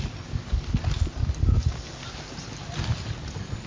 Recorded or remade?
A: recorded